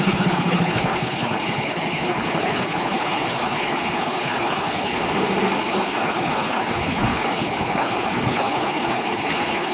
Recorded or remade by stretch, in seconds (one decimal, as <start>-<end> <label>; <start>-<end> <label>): 0.0-5.0 remade; 5.0-5.6 recorded; 5.6-9.7 remade